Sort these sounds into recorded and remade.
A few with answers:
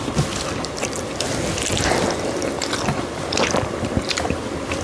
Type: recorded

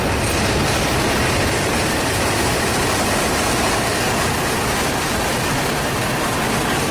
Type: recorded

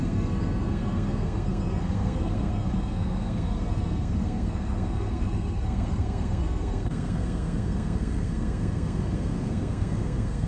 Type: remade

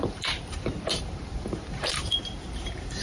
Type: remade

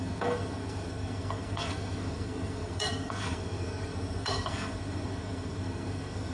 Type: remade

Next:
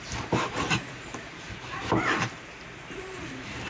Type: remade